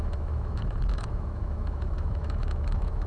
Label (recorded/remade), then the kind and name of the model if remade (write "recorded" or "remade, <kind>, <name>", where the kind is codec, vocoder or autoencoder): remade, autoencoder, DAC-VAE